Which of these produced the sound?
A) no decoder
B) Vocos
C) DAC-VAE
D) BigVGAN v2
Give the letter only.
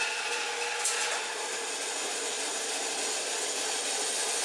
A